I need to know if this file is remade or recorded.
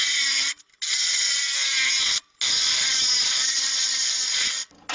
recorded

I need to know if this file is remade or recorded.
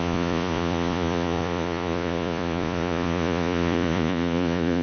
remade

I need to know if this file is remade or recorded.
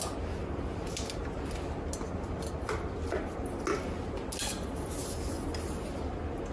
recorded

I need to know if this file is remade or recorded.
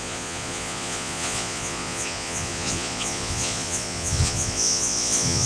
remade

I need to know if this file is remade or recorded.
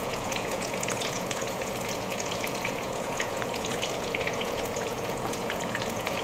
remade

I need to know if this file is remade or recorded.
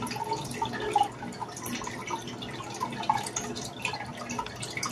recorded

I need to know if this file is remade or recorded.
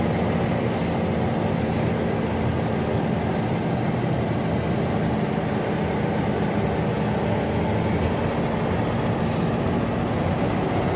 recorded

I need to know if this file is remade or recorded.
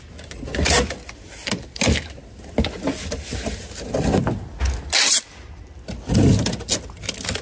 recorded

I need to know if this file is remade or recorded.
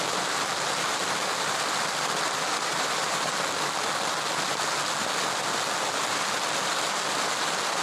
recorded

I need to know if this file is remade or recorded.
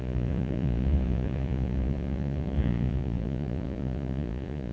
remade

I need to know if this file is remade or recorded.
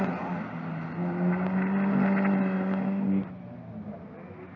recorded